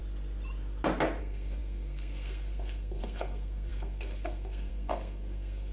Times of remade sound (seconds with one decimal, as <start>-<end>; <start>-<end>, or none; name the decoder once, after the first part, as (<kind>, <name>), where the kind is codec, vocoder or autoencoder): 1.2-5.7 (codec, SNAC)